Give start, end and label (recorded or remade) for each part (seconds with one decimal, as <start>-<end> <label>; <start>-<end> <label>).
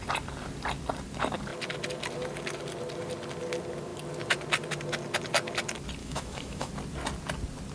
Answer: 0.0-6.0 recorded; 6.0-6.7 remade; 6.7-7.7 recorded